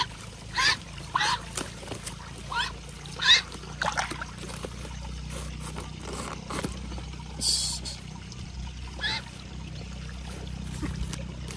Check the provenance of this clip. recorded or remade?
recorded